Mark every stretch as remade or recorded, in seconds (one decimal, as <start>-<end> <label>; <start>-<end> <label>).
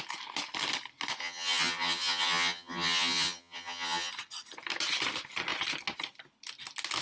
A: 0.0-1.2 recorded; 1.2-4.1 remade; 4.1-7.0 recorded